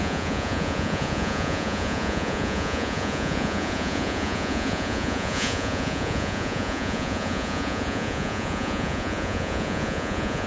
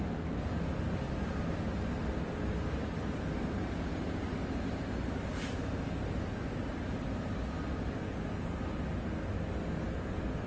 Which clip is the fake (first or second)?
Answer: first